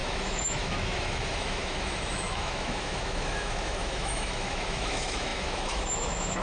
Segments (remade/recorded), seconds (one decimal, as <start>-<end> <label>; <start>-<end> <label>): 0.0-6.4 remade